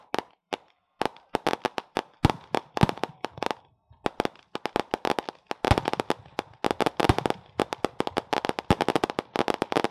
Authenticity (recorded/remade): recorded